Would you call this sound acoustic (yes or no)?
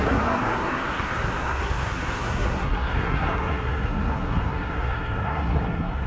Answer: no